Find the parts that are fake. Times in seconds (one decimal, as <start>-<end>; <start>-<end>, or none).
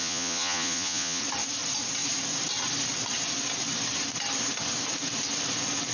0.0-1.2